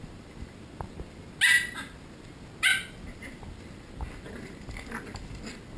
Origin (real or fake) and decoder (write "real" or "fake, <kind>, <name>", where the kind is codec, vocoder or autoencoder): real